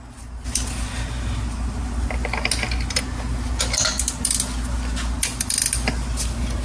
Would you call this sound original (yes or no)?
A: yes